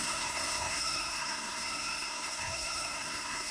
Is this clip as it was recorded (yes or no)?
no